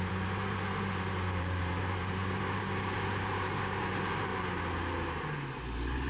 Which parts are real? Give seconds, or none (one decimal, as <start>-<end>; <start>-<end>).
4.3-6.1